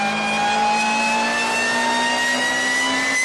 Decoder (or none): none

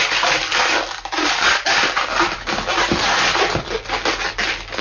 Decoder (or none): none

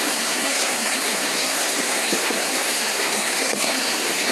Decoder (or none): codec, SNAC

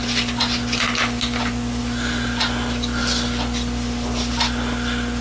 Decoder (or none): none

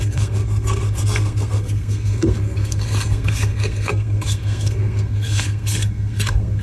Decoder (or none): codec, SNAC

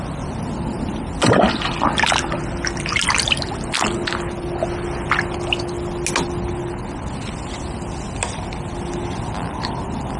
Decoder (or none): none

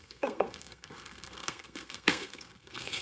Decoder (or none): codec, SNAC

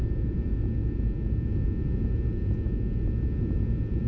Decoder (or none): vocoder, Vocos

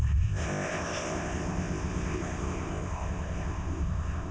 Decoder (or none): codec, ZipCodec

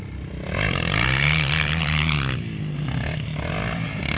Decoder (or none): none